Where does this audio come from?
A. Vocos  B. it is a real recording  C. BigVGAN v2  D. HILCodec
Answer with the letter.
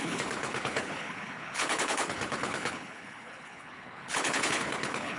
D